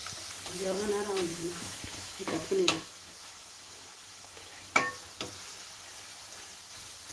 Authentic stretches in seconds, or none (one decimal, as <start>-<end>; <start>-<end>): 0.0-1.3; 4.9-7.1